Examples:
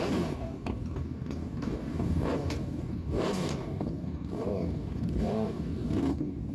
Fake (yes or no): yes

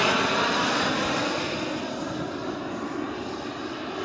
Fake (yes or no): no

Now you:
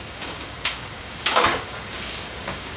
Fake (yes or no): yes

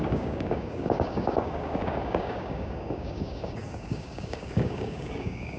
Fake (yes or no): yes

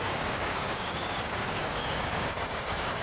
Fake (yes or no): yes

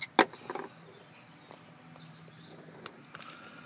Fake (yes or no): no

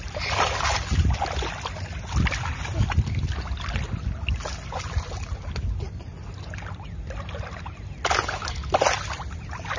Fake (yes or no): no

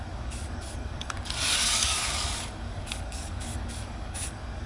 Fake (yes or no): yes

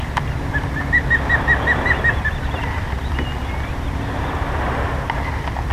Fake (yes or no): no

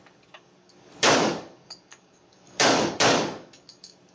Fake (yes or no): yes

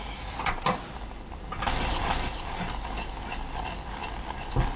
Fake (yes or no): no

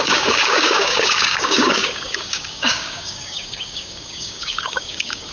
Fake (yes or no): yes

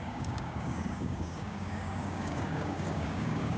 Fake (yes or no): yes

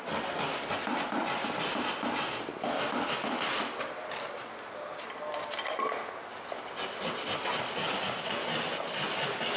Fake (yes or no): no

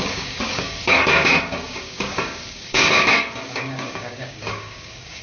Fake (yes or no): yes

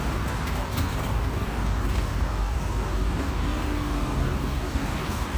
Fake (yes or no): yes